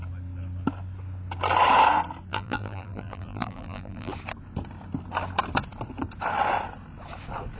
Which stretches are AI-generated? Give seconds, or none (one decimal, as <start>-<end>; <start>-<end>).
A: 2.3-4.1